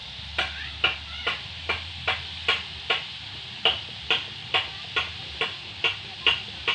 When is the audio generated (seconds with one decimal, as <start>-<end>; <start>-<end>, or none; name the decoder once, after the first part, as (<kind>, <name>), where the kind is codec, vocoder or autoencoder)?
none